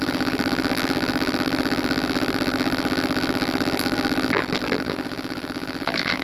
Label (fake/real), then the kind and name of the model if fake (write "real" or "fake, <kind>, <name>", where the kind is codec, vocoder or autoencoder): fake, vocoder, BigVGAN v2